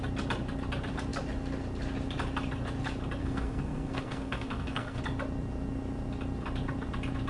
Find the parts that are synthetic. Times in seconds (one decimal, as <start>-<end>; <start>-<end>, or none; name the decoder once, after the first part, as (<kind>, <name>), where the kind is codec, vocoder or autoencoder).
3.2-5.0 (codec, SNAC)